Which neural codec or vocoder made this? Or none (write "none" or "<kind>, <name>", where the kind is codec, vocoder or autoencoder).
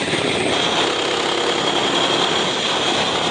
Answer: none